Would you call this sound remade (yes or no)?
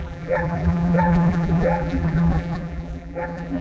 yes